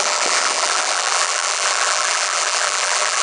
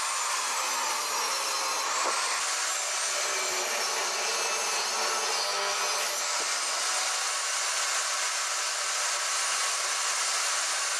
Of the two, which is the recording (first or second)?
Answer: second